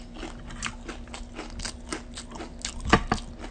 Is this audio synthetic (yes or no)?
no